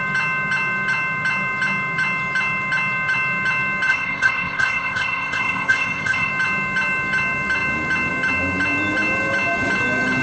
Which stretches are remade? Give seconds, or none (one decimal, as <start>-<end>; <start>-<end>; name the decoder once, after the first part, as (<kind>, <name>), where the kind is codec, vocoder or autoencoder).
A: 3.9-6.3 (codec, ZipCodec)